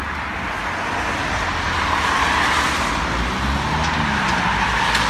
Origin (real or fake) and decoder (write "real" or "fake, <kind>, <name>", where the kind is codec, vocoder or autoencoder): real